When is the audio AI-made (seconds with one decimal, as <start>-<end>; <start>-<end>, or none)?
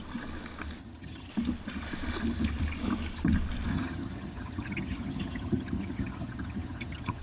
0.8-1.3; 3.7-7.2